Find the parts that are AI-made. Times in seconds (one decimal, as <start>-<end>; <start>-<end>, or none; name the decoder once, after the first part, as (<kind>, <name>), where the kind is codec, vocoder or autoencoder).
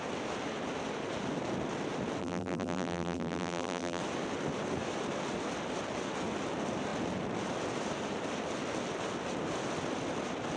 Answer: 2.2-4.0 (vocoder, BigVGAN v2)